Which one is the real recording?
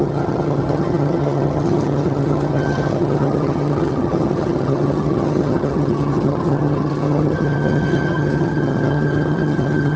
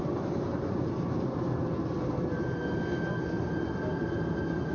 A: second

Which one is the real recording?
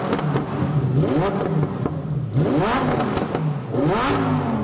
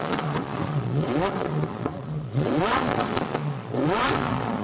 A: first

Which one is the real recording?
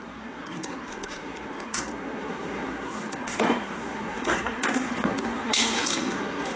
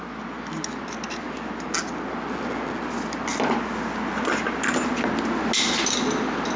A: second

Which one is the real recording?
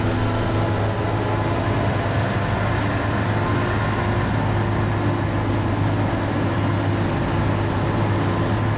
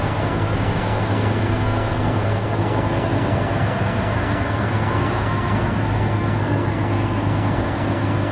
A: first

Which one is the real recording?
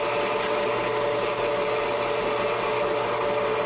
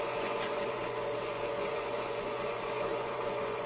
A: first